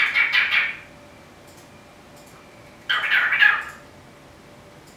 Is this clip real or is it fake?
real